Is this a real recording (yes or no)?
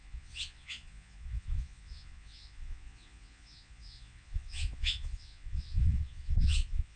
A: no